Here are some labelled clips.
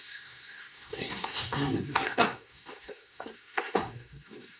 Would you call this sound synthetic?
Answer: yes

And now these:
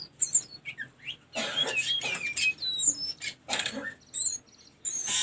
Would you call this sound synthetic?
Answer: no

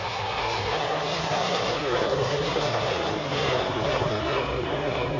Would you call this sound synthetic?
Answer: yes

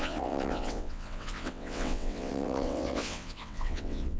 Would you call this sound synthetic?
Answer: yes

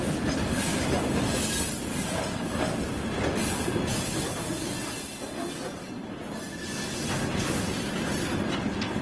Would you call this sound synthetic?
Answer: no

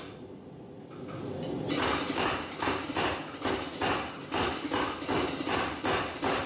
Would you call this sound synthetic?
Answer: no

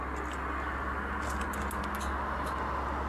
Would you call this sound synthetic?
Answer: no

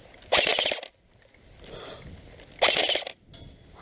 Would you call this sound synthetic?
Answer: no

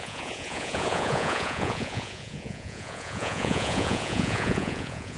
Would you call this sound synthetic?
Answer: yes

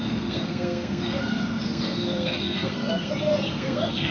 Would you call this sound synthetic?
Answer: yes